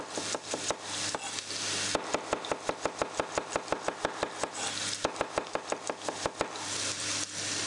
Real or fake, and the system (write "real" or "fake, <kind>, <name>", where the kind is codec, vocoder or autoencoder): real